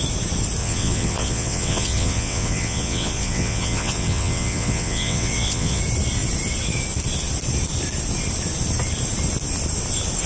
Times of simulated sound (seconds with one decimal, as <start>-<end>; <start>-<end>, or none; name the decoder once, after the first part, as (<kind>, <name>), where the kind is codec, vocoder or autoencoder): 0.6-5.8 (vocoder, WaveNeXt)